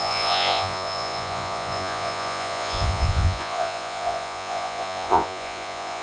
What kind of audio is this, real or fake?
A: fake